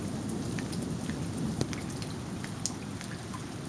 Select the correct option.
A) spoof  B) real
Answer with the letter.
B